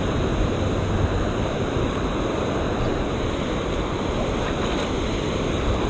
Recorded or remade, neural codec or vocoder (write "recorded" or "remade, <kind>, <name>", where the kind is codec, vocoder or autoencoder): recorded